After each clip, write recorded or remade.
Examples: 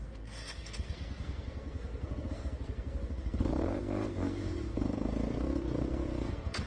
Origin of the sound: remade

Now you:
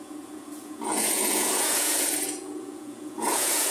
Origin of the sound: remade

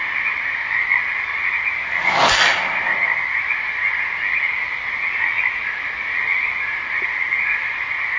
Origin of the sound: recorded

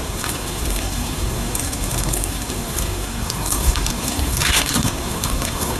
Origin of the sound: remade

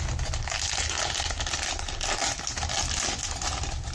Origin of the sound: recorded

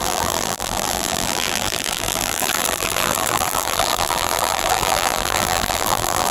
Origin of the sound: remade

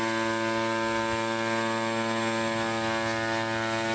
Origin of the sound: recorded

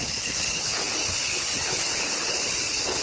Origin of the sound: remade